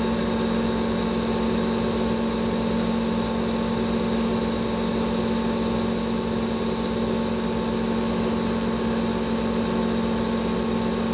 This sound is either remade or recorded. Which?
recorded